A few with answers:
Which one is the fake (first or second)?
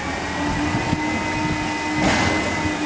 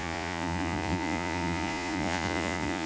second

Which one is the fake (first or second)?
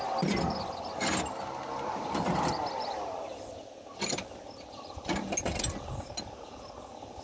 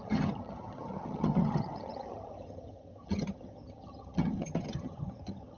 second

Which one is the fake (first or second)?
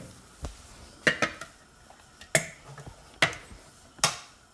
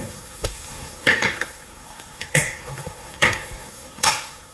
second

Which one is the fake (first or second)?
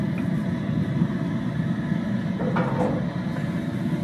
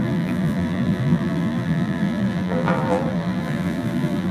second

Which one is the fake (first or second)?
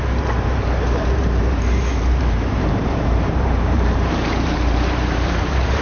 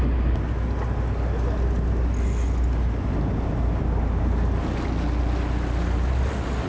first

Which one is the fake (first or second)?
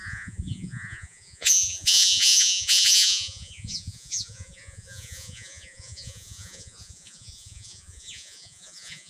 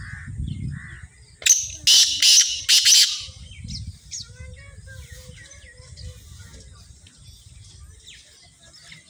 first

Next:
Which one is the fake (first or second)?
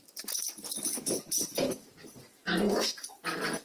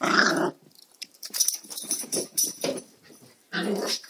second